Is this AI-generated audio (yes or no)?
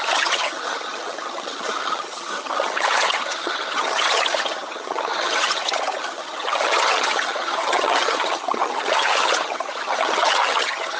yes